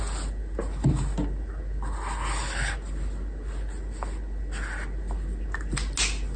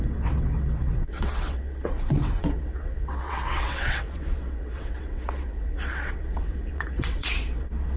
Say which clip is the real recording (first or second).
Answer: first